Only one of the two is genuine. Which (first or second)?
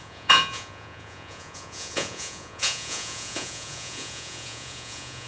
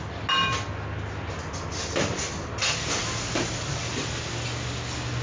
second